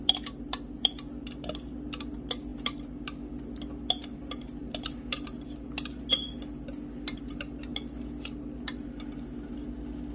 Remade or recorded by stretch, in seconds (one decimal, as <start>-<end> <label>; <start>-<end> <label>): 0.0-10.1 recorded